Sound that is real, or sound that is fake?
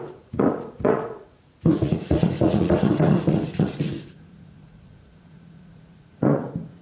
fake